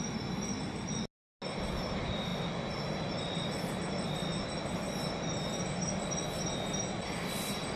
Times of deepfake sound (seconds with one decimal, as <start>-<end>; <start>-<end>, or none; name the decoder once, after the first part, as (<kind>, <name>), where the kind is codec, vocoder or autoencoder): none